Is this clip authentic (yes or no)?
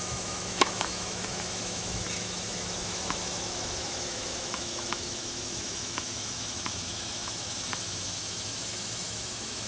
no